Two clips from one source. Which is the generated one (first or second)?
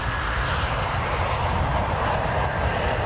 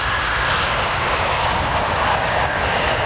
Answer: second